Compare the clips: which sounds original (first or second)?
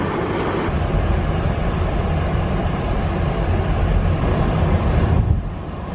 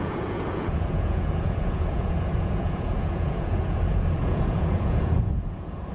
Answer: first